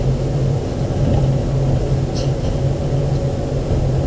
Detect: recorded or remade recorded